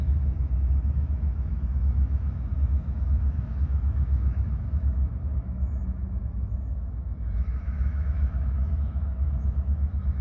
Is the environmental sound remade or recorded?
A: remade